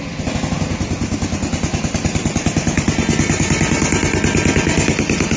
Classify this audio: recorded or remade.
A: recorded